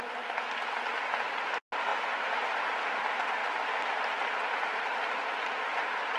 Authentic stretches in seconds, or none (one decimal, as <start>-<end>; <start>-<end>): 0.0-1.9; 2.7-3.4; 5.7-6.2